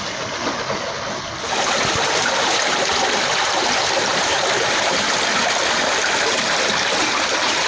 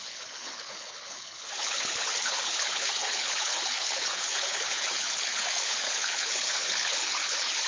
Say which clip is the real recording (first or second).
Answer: first